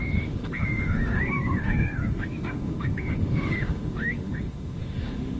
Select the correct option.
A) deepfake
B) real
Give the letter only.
A